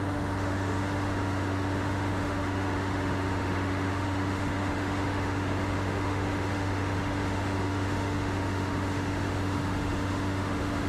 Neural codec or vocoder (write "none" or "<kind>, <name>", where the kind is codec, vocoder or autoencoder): autoencoder, DAC-VAE